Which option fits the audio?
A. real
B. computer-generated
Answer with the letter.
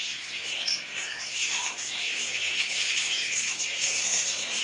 B